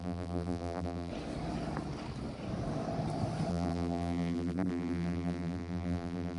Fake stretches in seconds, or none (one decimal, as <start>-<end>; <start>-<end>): 0.0-1.1; 3.5-6.4